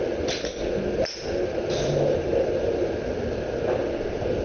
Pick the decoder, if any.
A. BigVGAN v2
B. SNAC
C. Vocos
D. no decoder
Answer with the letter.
D